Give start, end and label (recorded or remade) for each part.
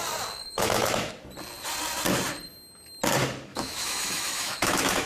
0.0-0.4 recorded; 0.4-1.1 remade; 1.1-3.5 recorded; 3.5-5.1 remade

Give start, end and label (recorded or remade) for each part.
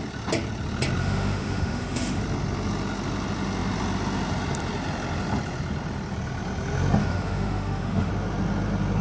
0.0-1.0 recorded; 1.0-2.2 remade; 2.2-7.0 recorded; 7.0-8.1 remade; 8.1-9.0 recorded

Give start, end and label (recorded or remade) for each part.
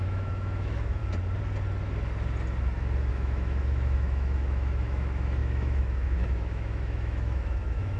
0.0-1.0 remade; 1.0-3.1 recorded; 3.1-8.0 remade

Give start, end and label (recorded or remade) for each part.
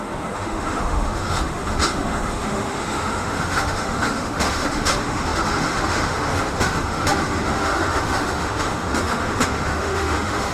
0.0-10.5 remade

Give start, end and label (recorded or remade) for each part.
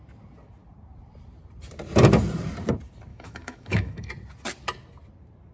0.0-3.1 recorded; 3.1-4.1 remade; 4.1-5.5 recorded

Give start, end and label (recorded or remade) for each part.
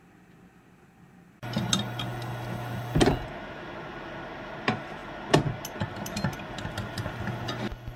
0.0-8.0 recorded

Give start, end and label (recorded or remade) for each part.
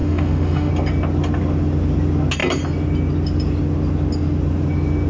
0.0-0.7 remade; 0.7-5.1 recorded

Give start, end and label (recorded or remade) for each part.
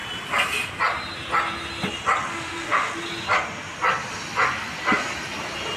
0.0-2.3 recorded; 2.3-2.9 remade; 2.9-5.8 recorded